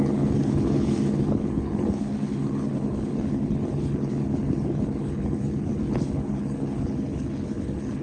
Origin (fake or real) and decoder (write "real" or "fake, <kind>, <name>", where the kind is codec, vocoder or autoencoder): fake, codec, HILCodec